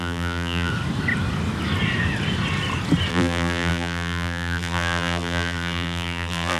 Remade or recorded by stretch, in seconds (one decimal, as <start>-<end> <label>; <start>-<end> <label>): 0.0-0.7 remade; 0.7-3.1 recorded; 3.1-6.6 remade